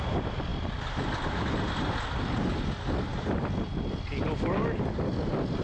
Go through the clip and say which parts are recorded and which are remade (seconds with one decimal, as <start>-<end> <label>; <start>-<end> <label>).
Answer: 0.0-5.6 recorded